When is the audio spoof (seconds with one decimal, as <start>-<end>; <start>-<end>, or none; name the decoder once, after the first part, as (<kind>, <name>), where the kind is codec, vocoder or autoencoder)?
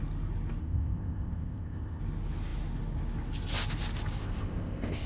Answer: 0.6-2.0 (codec, ZipCodec); 4.2-5.1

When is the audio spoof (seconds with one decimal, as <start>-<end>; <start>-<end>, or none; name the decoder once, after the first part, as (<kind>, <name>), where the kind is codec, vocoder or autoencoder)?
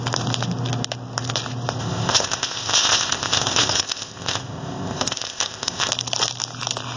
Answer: 1.8-5.9 (codec, ZipCodec)